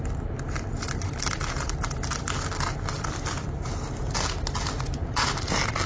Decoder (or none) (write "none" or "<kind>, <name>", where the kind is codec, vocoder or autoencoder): none